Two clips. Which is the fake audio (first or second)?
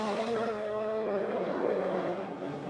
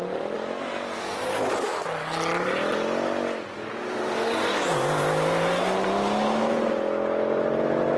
first